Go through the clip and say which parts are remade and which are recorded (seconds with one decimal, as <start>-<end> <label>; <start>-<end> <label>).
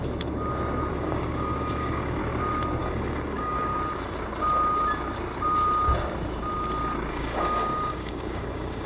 0.0-0.9 recorded; 0.9-2.2 remade; 2.2-2.8 recorded; 2.8-3.7 remade; 3.7-7.1 recorded; 7.1-8.9 remade